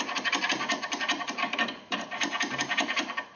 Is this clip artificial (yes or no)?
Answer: yes